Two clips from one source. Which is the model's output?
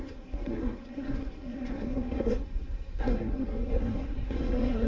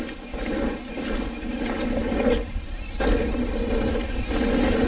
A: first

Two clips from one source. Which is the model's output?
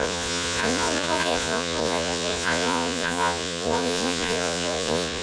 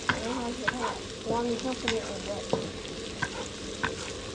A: first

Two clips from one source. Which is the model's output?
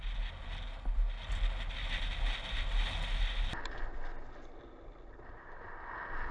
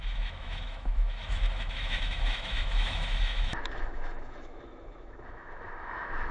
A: second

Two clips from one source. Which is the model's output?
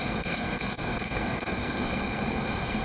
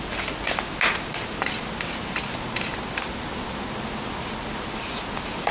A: first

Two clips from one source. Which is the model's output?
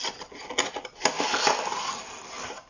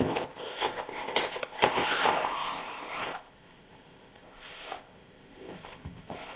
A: second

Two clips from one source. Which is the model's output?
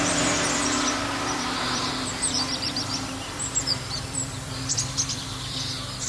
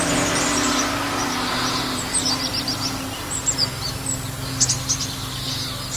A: first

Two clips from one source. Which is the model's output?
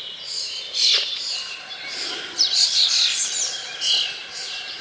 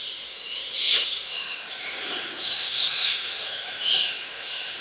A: second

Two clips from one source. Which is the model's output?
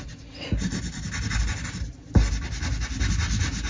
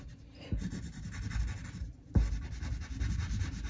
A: second